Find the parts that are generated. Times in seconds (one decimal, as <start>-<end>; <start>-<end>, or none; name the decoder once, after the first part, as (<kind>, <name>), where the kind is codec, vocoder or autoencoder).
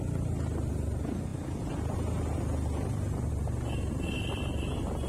none